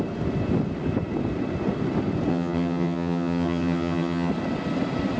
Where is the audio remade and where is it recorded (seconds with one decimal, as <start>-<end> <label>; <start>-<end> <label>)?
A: 0.0-2.3 recorded; 2.3-4.3 remade; 4.3-5.2 recorded